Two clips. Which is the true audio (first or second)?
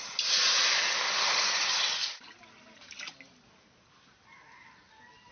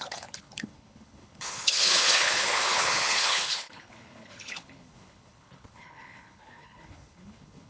first